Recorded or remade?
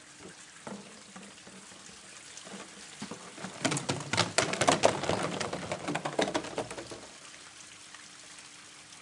recorded